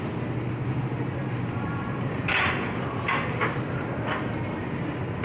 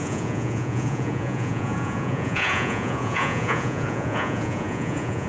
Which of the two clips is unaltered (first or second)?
first